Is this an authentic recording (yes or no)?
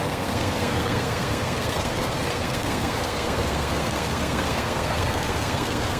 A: no